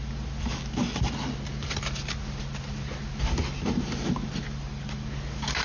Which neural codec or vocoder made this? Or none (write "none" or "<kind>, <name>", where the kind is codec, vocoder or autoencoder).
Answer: none